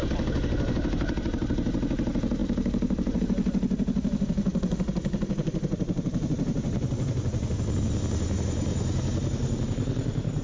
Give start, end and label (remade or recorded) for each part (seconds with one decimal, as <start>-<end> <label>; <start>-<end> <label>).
0.0-2.4 recorded; 2.4-3.2 remade; 3.2-4.5 recorded; 4.5-7.5 remade; 7.5-10.4 recorded